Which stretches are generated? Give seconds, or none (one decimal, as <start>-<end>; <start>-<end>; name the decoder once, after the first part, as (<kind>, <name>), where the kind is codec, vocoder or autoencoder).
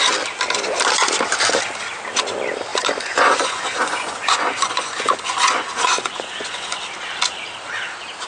2.7-6.8 (vocoder, Vocos)